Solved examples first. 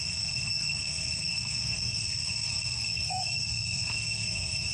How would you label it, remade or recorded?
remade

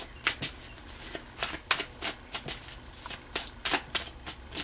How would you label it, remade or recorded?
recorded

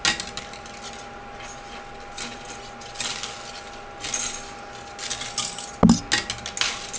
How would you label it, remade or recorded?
recorded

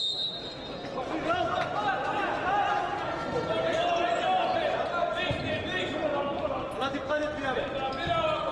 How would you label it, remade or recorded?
recorded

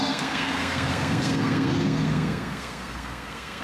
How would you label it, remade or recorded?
remade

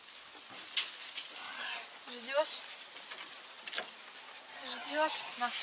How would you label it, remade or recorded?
recorded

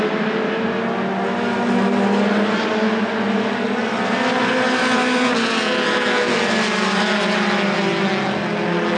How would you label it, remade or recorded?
recorded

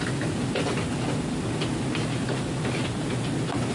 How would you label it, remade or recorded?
recorded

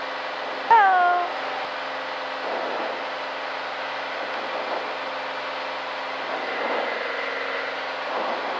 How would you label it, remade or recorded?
recorded